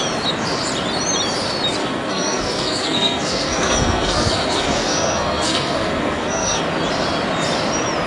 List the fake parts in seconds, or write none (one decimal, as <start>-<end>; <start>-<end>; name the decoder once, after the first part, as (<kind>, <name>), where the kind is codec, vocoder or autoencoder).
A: 1.8-6.6 (codec, SNAC)